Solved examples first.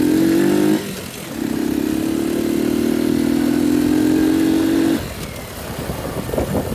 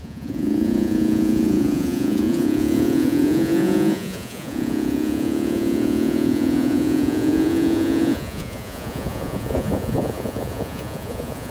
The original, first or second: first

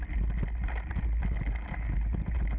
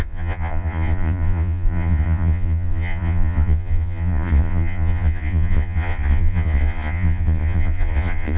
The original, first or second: first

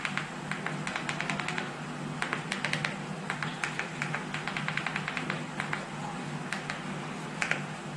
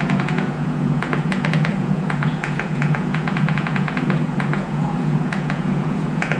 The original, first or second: first